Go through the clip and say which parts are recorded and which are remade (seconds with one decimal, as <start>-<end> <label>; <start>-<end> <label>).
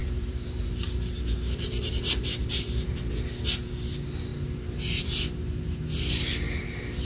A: 0.0-2.9 remade; 2.9-7.0 recorded